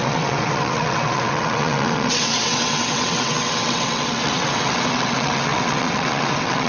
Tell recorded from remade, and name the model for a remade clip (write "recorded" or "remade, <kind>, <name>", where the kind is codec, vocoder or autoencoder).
remade, vocoder, WaveNeXt